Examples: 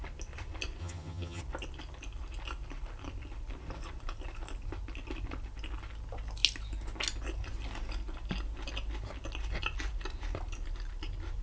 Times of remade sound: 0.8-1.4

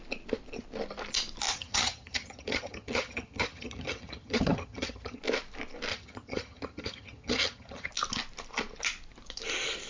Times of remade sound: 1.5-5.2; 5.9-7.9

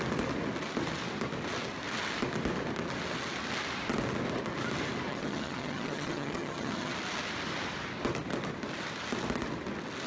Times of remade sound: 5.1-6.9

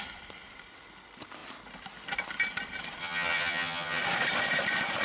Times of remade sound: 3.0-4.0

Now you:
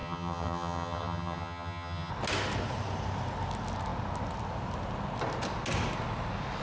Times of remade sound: 0.0-2.1